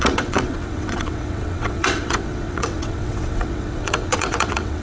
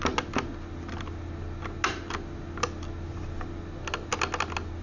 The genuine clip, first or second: second